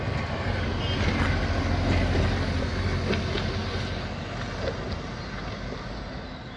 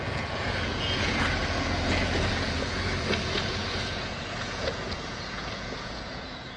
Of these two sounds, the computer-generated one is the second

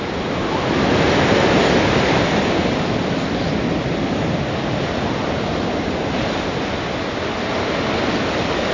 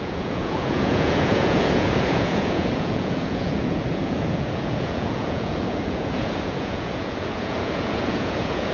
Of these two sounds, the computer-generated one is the second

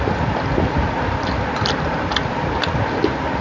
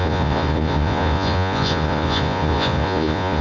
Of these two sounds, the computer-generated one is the second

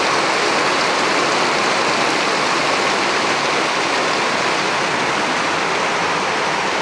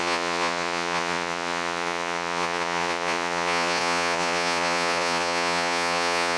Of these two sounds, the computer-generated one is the second